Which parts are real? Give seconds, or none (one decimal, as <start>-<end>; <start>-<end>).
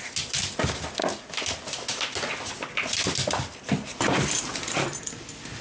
0.0-5.6